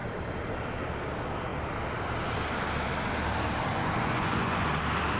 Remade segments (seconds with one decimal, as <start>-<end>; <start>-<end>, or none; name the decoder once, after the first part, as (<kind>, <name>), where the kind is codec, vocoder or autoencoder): 3.7-4.7 (vocoder, Vocos)